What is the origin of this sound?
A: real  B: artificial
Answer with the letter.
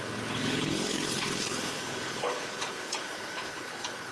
B